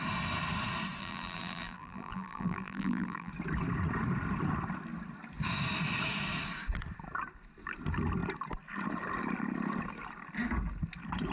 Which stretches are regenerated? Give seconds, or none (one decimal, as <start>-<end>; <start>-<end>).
1.0-3.3